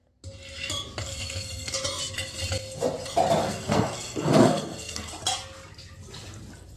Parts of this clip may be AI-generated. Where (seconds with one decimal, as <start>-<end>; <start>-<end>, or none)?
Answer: 1.0-1.7; 3.4-5.1